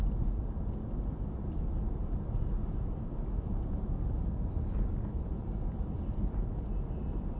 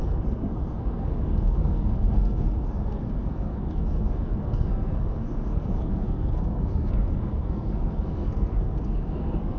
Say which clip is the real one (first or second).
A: first